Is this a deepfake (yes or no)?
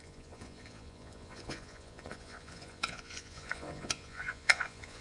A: yes